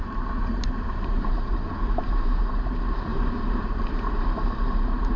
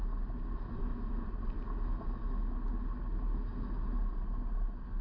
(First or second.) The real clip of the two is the second